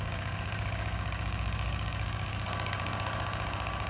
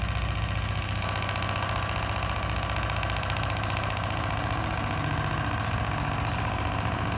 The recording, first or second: second